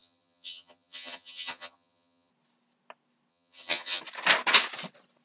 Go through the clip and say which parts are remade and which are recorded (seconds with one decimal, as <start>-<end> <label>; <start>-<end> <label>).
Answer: 0.0-2.3 remade; 2.3-3.3 recorded; 3.3-4.0 remade; 4.0-5.2 recorded